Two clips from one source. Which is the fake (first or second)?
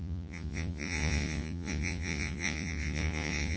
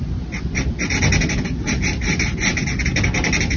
first